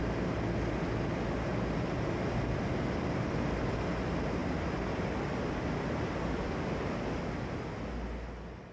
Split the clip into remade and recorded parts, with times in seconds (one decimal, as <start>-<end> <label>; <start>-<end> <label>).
0.0-1.5 recorded; 1.5-3.3 remade; 3.3-8.7 recorded